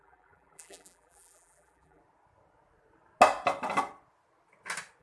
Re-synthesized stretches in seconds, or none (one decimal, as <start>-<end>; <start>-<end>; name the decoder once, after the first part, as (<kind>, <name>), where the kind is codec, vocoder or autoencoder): 0.0-2.0 (vocoder, BigVGAN v2)